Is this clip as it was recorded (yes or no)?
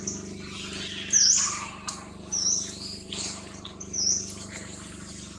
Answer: yes